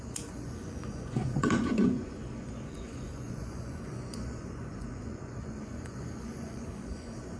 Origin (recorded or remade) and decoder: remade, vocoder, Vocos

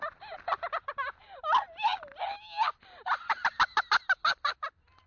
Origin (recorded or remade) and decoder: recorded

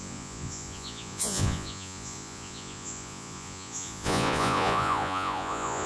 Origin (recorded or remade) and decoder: remade, vocoder, Vocos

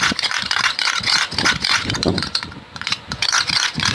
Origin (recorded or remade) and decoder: remade, vocoder, Vocos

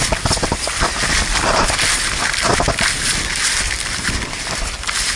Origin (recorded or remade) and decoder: recorded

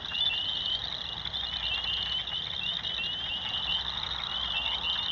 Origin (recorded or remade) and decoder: recorded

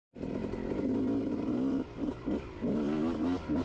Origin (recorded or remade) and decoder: recorded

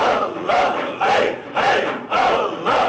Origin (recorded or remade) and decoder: remade, vocoder, Vocos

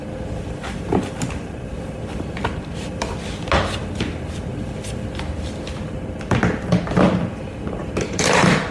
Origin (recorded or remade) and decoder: recorded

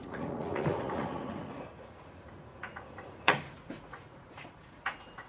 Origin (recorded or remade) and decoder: remade, vocoder, Vocos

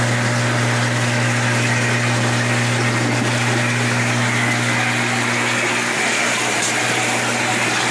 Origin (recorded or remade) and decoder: recorded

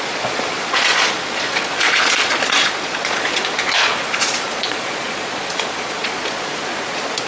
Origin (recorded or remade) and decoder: remade, vocoder, Vocos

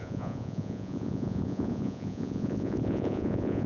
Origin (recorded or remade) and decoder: remade, vocoder, Vocos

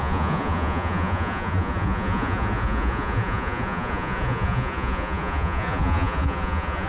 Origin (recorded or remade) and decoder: remade, vocoder, Vocos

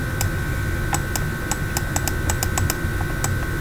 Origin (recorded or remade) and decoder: recorded